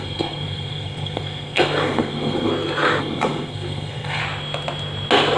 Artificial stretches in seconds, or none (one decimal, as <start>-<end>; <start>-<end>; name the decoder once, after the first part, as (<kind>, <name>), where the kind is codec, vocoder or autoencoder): 0.0-2.5 (codec, SNAC); 3.0-4.2